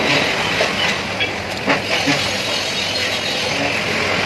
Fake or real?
real